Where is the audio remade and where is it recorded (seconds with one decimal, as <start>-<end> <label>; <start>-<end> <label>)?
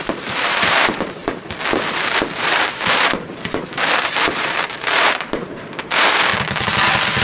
0.0-1.2 remade; 1.2-1.9 recorded; 1.9-6.3 remade; 6.3-7.2 recorded